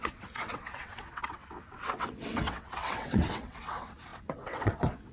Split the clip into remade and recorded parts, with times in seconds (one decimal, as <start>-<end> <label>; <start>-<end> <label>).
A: 0.0-5.1 remade